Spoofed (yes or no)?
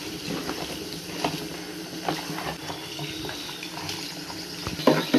no